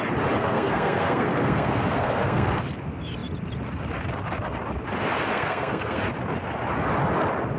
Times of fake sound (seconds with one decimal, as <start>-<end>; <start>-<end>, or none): 0.4-2.6; 5.3-6.0